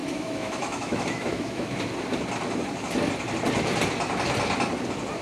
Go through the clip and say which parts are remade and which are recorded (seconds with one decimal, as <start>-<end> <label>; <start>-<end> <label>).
0.0-1.8 remade; 1.8-5.2 recorded